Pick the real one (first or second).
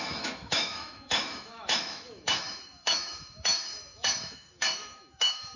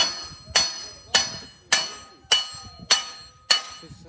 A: second